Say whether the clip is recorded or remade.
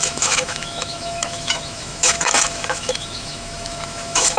remade